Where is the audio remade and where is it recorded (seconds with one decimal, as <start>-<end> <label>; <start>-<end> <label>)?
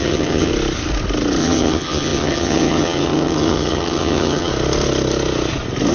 0.0-0.5 remade; 0.5-1.4 recorded; 1.4-4.5 remade; 4.5-5.9 recorded